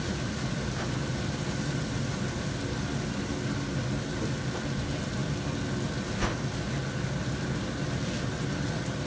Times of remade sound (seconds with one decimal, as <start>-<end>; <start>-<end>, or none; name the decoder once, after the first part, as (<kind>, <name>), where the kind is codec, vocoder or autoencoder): none